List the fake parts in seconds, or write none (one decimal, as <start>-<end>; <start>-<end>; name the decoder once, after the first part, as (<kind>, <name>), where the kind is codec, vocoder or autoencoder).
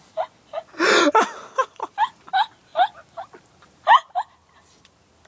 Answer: none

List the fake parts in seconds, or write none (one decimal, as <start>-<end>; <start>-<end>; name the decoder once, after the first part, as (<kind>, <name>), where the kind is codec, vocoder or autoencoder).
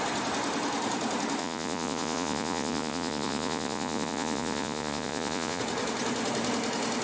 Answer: 1.4-5.6 (vocoder, Vocos)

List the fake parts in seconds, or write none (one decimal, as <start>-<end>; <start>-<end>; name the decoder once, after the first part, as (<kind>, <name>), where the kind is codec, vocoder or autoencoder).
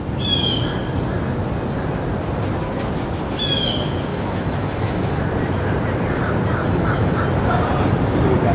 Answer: 4.1-5.2 (autoencoder, DAC-VAE); 6.6-7.2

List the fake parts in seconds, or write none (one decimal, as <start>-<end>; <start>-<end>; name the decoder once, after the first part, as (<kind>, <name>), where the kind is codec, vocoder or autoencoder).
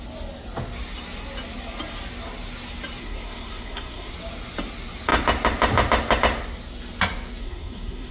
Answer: 3.0-4.1 (codec, SNAC); 7.4-8.1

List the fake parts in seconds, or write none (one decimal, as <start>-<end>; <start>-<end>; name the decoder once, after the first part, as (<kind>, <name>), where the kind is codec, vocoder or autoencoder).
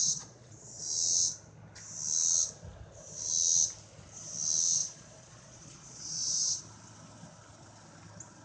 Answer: 0.0-0.8 (vocoder, Vocos); 4.8-6.6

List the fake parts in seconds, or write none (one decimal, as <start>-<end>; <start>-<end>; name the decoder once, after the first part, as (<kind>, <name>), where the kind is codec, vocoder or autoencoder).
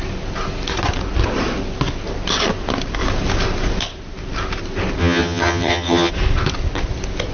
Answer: 5.0-6.1 (vocoder, HiFi-GAN)